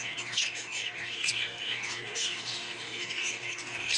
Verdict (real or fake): fake